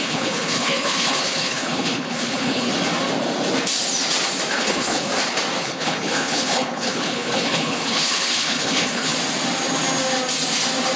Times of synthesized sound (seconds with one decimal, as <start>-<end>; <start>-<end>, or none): 0.0-2.7; 4.5-5.1; 5.6-9.1